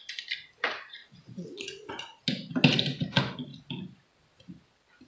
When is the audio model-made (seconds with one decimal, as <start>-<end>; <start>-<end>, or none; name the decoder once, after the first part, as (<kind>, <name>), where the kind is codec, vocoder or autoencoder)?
1.0-1.9 (vocoder, Vocos)